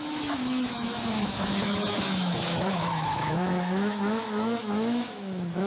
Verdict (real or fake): fake